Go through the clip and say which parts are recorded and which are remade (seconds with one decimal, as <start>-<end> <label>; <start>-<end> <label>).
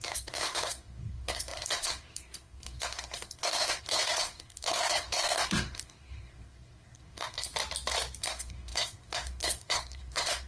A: 0.0-7.5 remade; 7.5-8.2 recorded; 8.2-10.5 remade